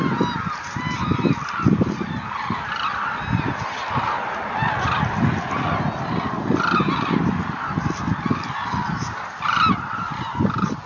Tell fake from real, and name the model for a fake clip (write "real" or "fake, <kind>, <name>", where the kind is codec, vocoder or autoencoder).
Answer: real